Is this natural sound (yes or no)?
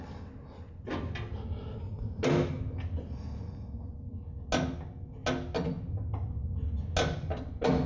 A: yes